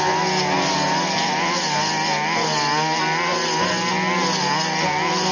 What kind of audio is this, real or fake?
real